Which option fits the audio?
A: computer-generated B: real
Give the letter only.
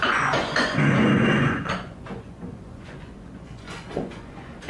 A